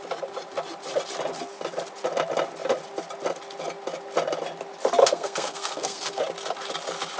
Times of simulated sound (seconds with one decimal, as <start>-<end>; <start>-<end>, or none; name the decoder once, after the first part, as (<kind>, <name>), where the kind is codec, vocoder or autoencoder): 5.0-6.2 (codec, SNAC)